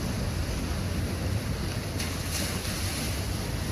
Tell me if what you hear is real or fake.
real